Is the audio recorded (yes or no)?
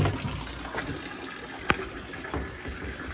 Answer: yes